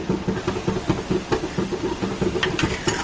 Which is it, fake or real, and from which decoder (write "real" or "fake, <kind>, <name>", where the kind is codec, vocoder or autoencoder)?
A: real